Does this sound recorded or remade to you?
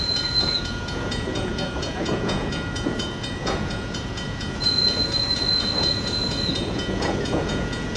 remade